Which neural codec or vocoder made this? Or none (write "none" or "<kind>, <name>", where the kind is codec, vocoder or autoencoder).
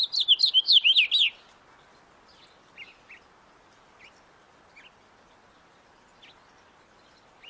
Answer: none